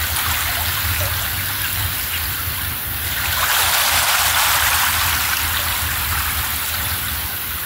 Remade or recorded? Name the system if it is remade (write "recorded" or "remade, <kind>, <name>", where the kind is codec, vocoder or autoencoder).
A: recorded